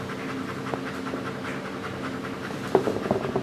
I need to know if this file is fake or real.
real